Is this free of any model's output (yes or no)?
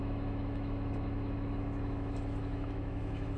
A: no